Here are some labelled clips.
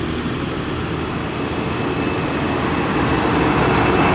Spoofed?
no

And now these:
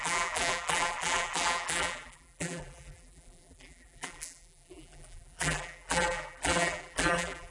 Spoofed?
yes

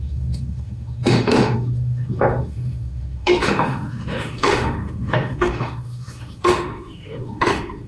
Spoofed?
yes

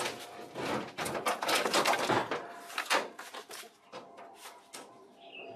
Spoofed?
no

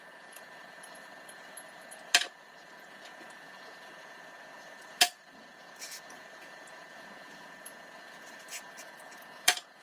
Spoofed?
yes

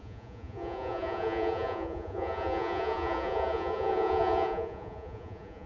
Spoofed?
yes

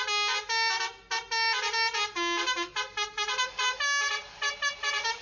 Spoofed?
no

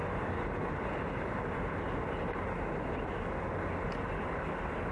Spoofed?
no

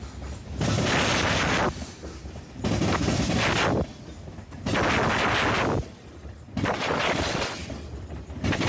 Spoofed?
no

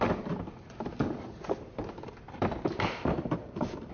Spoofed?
yes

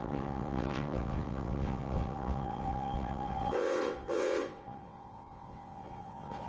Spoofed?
yes